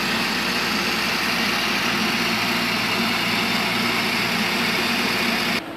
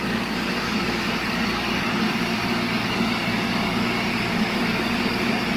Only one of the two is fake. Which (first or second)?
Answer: second